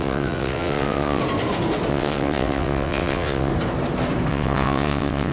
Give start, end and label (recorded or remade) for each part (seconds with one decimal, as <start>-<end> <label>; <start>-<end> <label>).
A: 0.0-1.2 remade; 1.2-1.9 recorded; 1.9-3.5 remade; 3.5-4.3 recorded; 4.3-5.3 remade